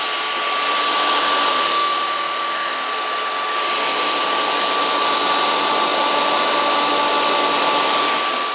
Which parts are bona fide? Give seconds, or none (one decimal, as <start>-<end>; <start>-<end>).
0.0-1.5; 2.9-8.5